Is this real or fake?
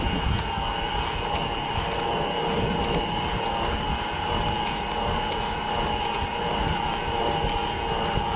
real